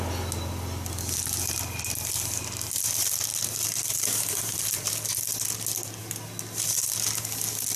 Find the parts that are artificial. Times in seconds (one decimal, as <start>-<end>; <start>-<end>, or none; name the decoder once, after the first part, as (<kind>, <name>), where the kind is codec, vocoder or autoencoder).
3.3-4.9 (vocoder, BigVGAN v2)